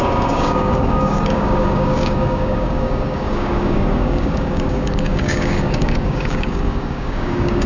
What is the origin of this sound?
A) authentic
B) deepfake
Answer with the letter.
B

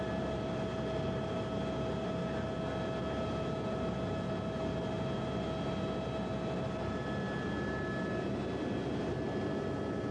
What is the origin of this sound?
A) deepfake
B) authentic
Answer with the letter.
B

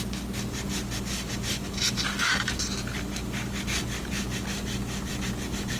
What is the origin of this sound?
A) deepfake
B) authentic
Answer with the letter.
B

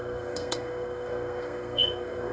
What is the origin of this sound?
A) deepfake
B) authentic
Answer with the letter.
A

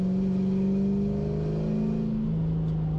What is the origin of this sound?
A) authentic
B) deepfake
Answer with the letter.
A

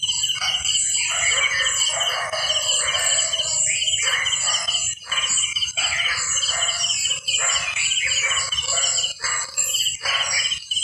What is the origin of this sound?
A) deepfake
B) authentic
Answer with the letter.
B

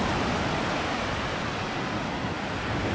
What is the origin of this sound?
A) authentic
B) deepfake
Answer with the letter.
A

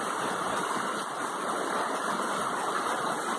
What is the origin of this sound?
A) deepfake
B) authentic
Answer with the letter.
B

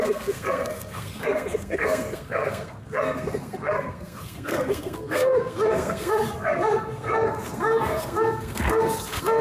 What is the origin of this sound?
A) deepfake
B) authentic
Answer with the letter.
A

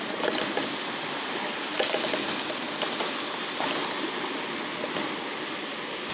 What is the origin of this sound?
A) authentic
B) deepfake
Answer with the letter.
A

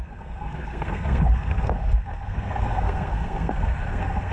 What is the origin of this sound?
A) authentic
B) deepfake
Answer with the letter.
B